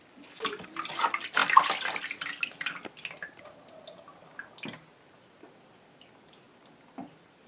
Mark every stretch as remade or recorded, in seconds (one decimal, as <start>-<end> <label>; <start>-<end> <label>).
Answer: 0.0-7.5 recorded